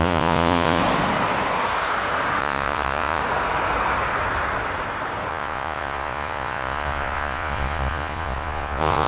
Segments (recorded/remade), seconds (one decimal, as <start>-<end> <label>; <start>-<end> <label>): 0.0-0.8 remade; 0.8-2.4 recorded; 2.4-3.2 remade; 3.2-5.3 recorded; 5.3-9.1 remade